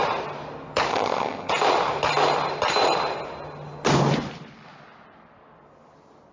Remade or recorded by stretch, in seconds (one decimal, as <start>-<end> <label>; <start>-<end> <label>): 0.0-0.9 recorded; 0.9-1.5 remade; 1.5-6.3 recorded

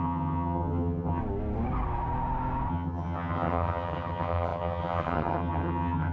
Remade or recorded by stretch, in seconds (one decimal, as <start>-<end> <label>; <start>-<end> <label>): 0.0-1.2 remade; 1.2-2.7 recorded; 2.7-6.1 remade

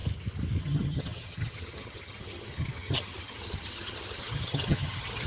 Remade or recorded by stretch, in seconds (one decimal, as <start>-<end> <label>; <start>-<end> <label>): 0.0-0.6 recorded; 0.6-5.3 remade